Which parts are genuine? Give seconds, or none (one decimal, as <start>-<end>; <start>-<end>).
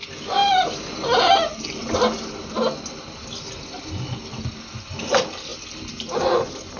0.0-6.8